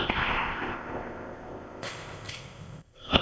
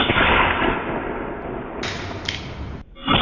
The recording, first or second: second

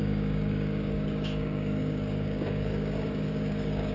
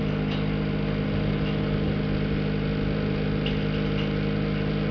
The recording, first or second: second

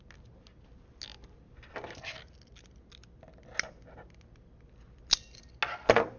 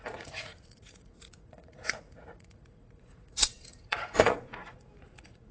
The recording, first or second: first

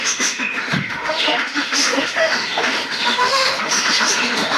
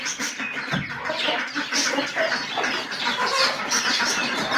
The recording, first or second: second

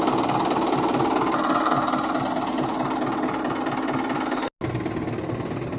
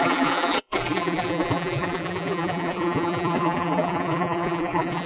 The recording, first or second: first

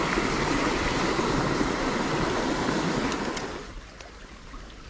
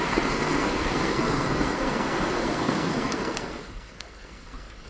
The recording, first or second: first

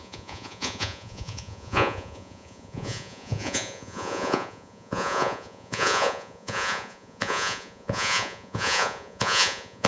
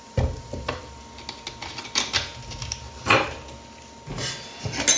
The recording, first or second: second